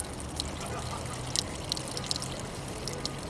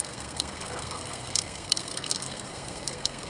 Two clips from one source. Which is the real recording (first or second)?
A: first